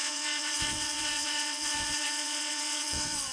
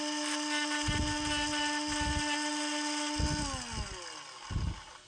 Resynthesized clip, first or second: first